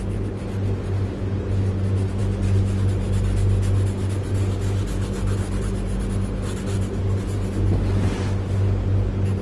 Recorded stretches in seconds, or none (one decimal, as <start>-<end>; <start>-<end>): 0.0-9.4